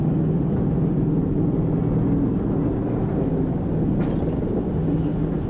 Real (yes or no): yes